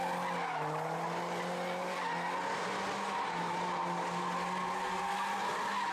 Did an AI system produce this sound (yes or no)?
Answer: no